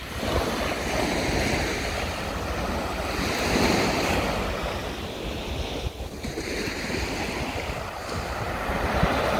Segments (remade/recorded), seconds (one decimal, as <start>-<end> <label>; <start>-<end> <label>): 0.0-9.4 recorded